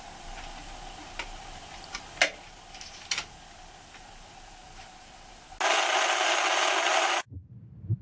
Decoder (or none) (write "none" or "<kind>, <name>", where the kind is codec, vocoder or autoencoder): none